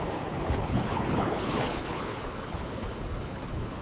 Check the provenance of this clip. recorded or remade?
remade